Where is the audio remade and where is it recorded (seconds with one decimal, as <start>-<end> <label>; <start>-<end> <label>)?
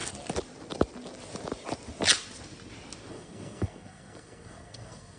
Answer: 0.0-3.1 recorded; 3.1-5.2 remade